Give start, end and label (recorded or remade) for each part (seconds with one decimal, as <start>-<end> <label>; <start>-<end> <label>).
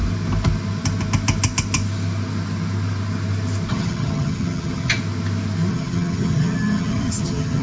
0.0-3.7 recorded; 3.7-5.0 remade; 5.0-5.7 recorded; 5.7-7.6 remade